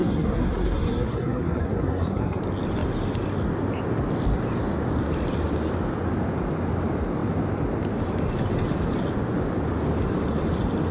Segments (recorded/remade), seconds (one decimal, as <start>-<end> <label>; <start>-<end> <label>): 0.0-2.4 remade; 2.4-10.9 recorded